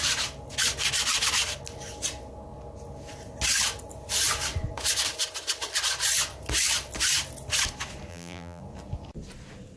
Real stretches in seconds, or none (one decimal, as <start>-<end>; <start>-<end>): 0.0-8.1; 8.6-9.8